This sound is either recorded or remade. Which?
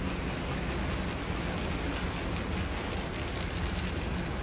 recorded